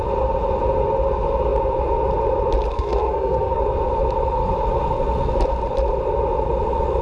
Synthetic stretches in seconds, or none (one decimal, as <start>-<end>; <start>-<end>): 2.7-3.6

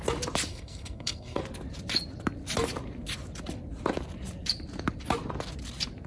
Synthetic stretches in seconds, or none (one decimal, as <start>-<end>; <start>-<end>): 0.5-1.4

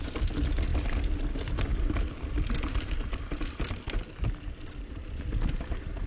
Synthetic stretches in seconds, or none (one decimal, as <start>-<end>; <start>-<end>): none